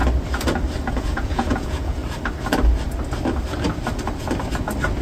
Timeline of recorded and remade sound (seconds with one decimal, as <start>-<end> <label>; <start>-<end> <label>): 0.0-0.9 recorded; 0.9-2.0 remade; 2.0-5.0 recorded